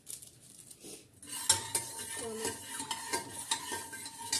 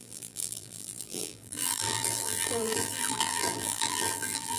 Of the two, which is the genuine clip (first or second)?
first